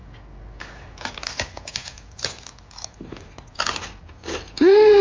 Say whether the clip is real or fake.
real